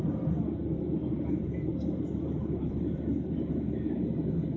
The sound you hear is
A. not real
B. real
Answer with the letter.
B